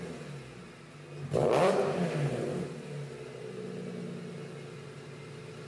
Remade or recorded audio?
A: recorded